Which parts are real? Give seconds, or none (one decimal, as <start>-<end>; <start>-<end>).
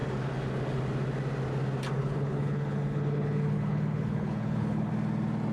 0.0-2.0; 4.9-5.5